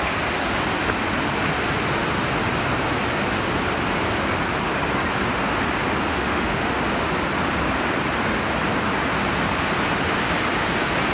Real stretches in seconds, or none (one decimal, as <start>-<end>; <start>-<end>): 0.0-6.1; 6.8-11.1